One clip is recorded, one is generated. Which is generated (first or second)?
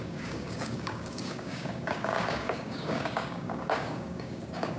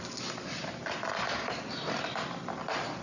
first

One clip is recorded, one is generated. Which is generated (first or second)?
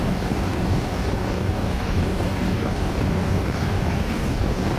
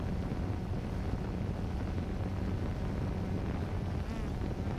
first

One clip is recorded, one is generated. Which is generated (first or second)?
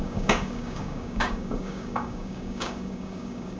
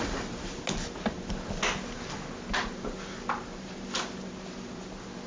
first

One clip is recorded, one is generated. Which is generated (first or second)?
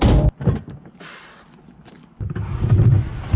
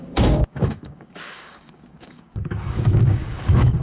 second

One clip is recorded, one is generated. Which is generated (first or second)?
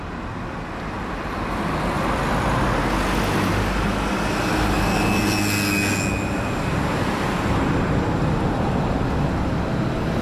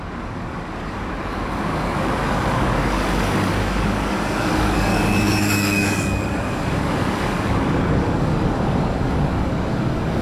second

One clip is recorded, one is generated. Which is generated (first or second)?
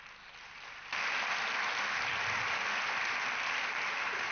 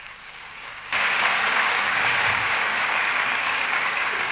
second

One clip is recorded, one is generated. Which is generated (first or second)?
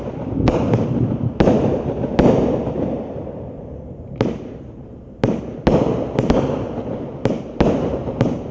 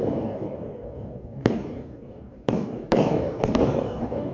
second